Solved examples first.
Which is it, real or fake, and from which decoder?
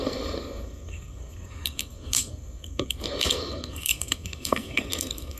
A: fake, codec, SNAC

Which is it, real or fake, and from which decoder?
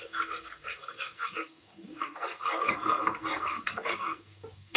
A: fake, codec, SNAC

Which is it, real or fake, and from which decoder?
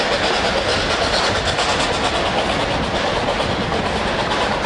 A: real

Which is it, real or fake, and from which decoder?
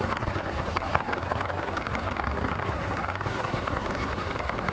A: fake, codec, SNAC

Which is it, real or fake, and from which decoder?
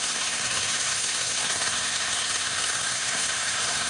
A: fake, codec, SNAC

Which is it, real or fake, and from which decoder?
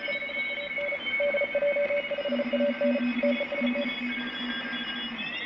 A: real